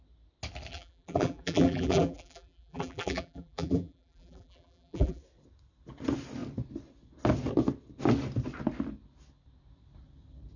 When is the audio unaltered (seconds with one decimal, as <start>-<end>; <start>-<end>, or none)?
0.0-0.7; 5.2-10.6